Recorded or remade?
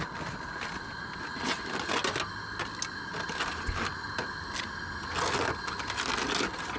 recorded